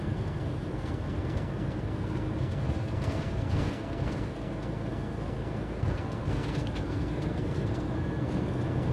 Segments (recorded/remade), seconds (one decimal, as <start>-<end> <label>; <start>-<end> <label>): 0.0-8.9 remade

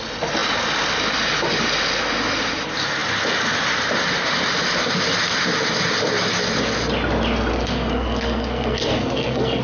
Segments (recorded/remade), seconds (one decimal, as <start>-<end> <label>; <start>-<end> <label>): 0.0-7.5 recorded; 7.5-9.6 remade

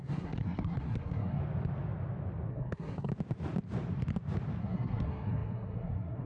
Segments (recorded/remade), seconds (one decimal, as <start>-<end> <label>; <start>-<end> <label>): 0.0-1.4 remade; 1.4-2.5 recorded; 2.5-3.1 remade; 3.1-4.6 recorded; 4.6-6.3 remade

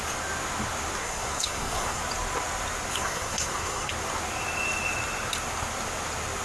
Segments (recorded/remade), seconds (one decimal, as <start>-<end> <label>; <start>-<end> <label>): 0.0-1.0 recorded; 1.0-2.0 remade; 2.0-2.9 recorded; 2.9-3.9 remade; 3.9-6.4 recorded

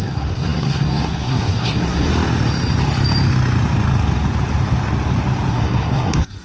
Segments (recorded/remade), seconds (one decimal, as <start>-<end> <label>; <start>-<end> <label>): 0.0-2.1 remade; 2.1-5.5 recorded; 5.5-6.4 remade

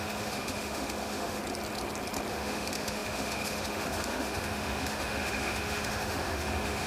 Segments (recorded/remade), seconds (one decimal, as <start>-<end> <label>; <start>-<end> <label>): 0.0-1.4 remade; 1.4-2.3 recorded; 2.3-6.9 remade